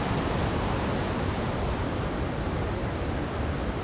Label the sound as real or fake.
real